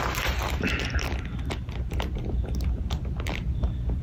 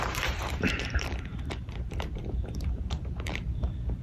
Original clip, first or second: first